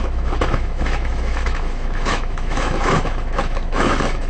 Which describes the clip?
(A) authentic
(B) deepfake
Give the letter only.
B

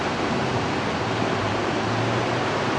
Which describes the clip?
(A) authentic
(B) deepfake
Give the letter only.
A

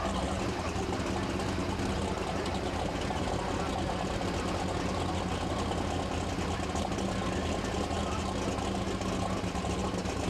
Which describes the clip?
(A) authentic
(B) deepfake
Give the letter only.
A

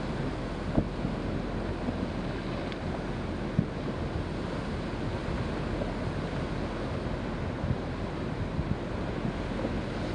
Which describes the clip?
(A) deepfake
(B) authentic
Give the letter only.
B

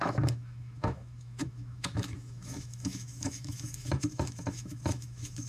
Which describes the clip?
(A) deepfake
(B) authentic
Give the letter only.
A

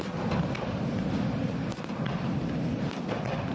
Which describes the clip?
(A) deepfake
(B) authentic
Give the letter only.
B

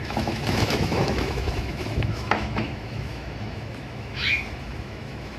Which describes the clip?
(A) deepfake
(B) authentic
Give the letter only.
A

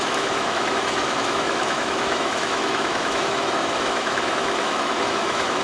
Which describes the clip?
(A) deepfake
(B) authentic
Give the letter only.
A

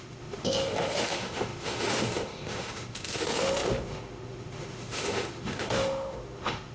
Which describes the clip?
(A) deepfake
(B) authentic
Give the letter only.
A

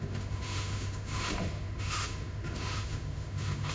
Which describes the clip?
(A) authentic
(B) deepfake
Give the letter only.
B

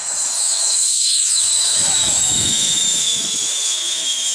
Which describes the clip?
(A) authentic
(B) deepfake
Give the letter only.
B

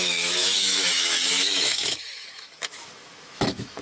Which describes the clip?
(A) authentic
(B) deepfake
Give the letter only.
B